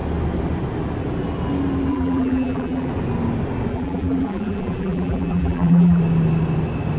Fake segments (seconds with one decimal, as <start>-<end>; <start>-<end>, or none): 1.9-2.9; 3.7-6.0